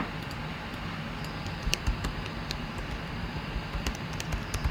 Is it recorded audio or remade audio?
remade